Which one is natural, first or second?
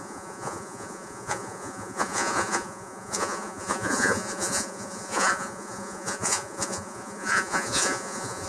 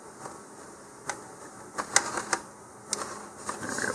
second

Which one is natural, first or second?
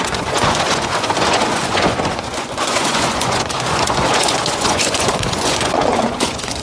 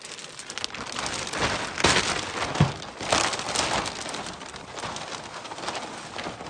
second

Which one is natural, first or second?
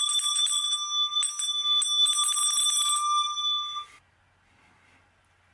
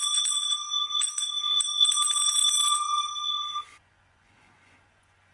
first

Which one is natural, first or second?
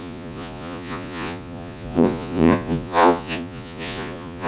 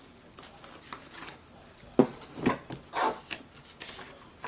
second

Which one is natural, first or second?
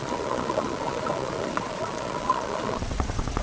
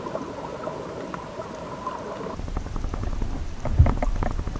second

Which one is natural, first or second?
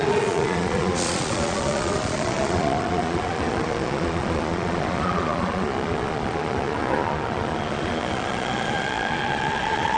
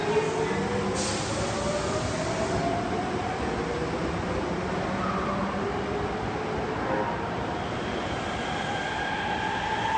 second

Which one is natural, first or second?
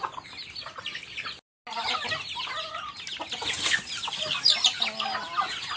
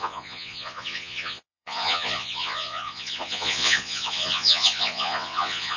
first